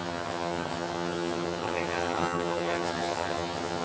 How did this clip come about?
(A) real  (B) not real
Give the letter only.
B